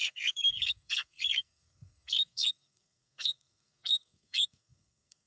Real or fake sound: fake